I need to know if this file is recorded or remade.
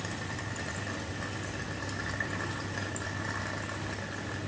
recorded